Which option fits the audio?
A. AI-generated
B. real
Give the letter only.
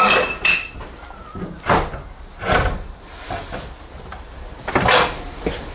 B